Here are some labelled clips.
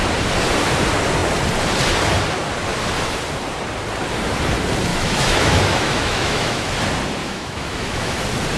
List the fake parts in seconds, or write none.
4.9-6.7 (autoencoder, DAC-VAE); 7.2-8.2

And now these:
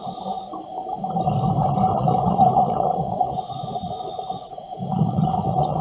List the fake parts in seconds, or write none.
1.9-5.8 (vocoder, Vocos)

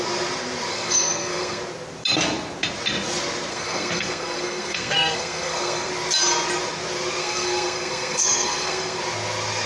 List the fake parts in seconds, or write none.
0.7-1.6 (codec, SNAC); 3.5-5.9; 7.2-9.0